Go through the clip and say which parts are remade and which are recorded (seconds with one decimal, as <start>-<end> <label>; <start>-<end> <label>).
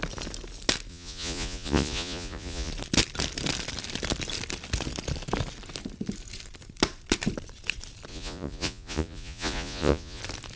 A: 0.0-0.9 recorded; 0.9-2.7 remade; 2.7-8.1 recorded; 8.1-10.2 remade; 10.2-10.6 recorded